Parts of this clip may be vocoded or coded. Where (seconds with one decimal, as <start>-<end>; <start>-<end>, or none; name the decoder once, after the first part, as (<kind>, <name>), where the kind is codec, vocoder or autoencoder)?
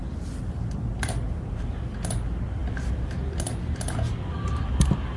none